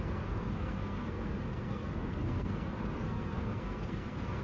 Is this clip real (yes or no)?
no